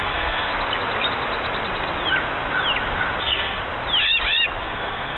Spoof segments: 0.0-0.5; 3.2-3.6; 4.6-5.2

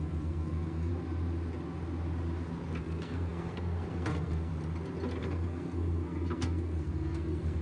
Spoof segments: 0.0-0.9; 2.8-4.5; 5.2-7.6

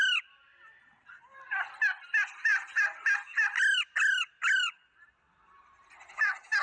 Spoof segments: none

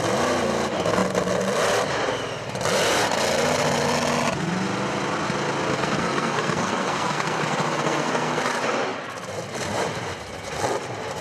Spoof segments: 5.7-8.4